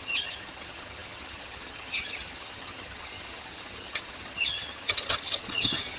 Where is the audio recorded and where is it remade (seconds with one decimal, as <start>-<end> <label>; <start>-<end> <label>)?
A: 0.0-6.0 remade